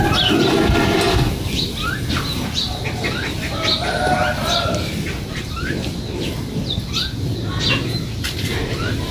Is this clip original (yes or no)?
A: no